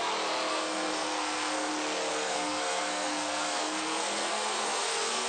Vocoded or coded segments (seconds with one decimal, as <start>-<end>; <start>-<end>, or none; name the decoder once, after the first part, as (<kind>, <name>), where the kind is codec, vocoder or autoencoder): 0.5-1.7 (codec, SNAC); 2.1-5.3